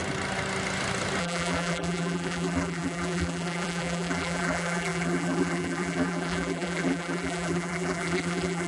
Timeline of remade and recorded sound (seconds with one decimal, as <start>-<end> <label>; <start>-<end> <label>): 0.0-1.2 recorded; 1.2-8.7 remade